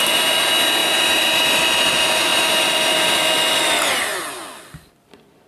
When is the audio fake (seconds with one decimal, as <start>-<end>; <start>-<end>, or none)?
none